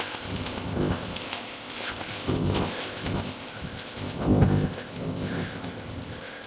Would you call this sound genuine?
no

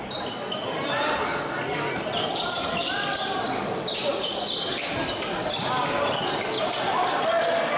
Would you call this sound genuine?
yes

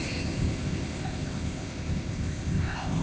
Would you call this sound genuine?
no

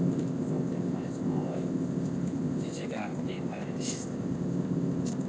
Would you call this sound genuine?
no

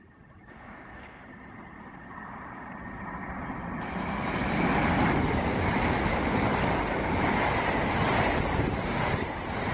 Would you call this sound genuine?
yes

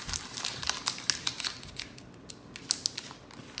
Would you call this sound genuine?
yes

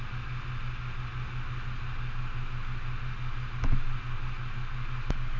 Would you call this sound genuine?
yes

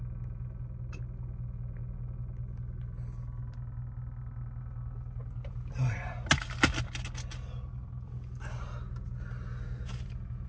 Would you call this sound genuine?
yes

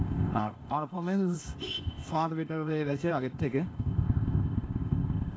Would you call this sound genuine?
no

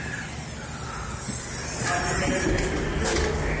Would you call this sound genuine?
yes